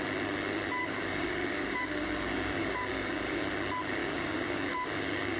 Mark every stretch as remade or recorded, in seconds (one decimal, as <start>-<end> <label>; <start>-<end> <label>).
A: 0.0-0.8 recorded; 0.8-3.4 remade; 3.4-4.0 recorded; 4.0-5.4 remade